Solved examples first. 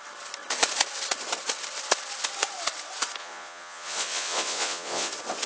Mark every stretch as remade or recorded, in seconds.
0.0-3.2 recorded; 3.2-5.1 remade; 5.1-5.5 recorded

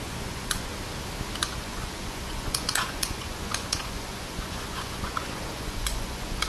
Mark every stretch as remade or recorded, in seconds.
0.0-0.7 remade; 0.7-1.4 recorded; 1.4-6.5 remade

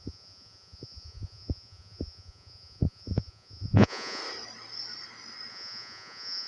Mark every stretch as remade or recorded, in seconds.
0.0-4.2 remade; 4.2-5.5 recorded; 5.5-6.5 remade